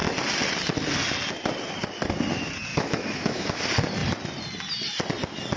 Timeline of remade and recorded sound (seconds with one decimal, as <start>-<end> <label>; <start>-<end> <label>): 0.0-2.7 recorded; 2.7-3.6 remade; 3.6-5.6 recorded